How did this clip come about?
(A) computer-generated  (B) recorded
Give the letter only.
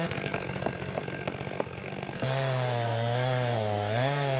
A